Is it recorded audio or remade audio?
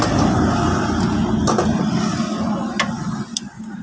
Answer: recorded